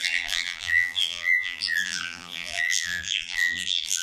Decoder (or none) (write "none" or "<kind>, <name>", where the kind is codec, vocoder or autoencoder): vocoder, BigVGAN v2